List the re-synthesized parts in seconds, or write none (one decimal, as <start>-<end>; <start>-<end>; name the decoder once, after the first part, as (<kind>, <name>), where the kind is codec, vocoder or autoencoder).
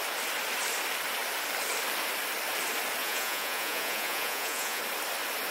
3.0-4.8 (vocoder, Vocos)